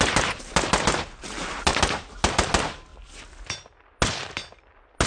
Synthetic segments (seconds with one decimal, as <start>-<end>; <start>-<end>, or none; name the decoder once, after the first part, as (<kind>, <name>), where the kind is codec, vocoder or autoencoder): none